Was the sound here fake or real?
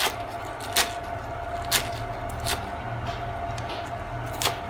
real